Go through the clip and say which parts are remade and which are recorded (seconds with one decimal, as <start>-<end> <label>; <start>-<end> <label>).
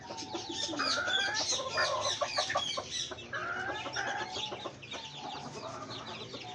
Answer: 0.0-6.5 recorded